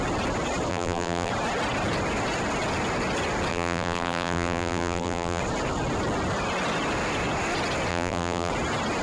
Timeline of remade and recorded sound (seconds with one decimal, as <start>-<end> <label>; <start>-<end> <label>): 0.0-0.7 recorded; 0.7-1.3 remade; 1.3-3.5 recorded; 3.5-5.4 remade; 5.4-7.9 recorded; 7.9-8.5 remade; 8.5-9.0 recorded